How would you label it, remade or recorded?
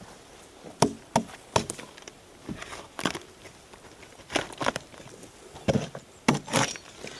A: recorded